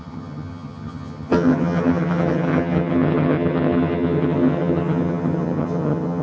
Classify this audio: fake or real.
fake